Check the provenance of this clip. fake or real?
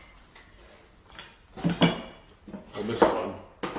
real